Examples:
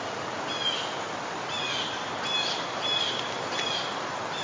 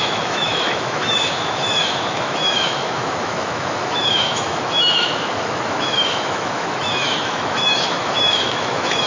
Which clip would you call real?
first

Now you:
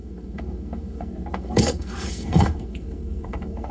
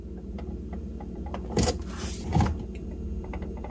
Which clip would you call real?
second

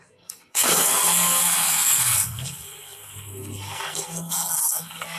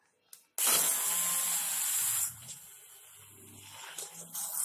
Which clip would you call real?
second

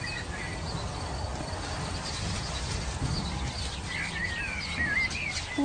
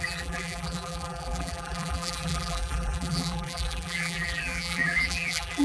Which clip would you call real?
first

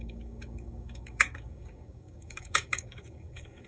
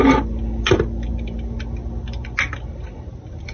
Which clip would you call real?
second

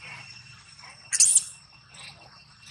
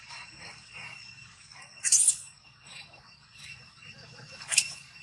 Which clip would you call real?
first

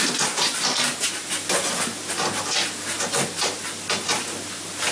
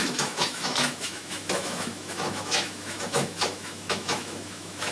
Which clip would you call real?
first